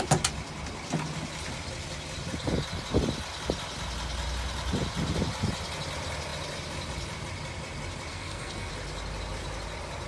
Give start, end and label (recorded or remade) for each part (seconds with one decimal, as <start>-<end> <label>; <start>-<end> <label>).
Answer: 0.0-8.1 recorded; 8.1-8.7 remade; 8.7-10.1 recorded